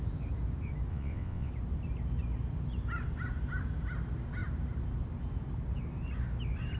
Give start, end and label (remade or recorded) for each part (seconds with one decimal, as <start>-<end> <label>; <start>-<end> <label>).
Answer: 0.0-0.9 recorded; 0.9-1.5 remade; 1.5-6.8 recorded